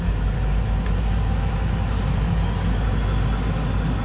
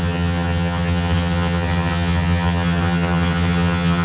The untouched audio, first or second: first